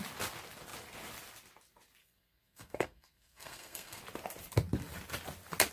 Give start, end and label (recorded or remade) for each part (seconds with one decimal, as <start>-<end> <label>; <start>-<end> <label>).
0.0-2.0 recorded; 2.0-4.0 remade; 4.0-5.7 recorded